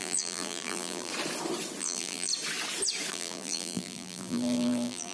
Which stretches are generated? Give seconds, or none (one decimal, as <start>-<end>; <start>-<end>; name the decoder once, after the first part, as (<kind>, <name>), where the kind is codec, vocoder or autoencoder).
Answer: 0.0-1.1 (vocoder, BigVGAN v2); 1.8-2.3; 3.1-5.1